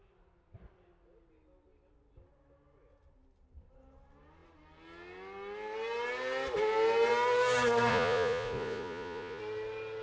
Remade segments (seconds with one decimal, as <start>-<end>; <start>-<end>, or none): 7.9-9.4